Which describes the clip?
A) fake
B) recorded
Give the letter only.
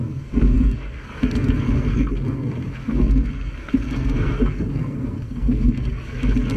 A